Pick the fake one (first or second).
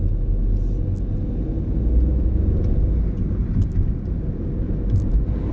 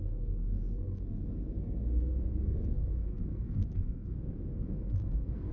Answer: second